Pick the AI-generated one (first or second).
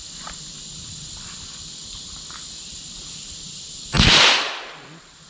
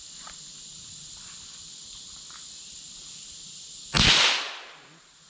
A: first